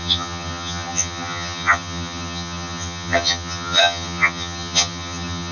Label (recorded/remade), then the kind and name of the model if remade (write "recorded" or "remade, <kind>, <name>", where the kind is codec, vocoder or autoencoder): remade, vocoder, HiFi-GAN